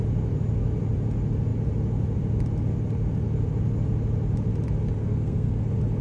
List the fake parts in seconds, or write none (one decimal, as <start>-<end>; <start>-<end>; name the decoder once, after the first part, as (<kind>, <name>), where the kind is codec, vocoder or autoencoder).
5.0-5.6 (codec, SNAC)